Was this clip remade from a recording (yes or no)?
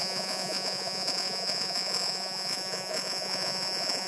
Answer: yes